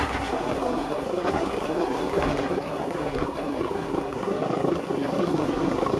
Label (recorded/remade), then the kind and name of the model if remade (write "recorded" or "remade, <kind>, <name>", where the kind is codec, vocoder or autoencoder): remade, codec, SNAC